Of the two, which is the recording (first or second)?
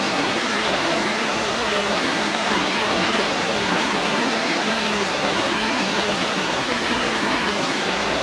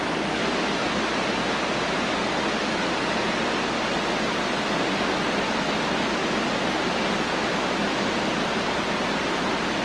second